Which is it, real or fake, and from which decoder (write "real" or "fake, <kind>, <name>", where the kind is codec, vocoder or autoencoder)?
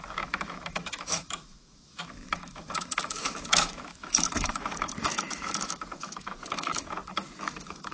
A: fake, autoencoder, DAC-VAE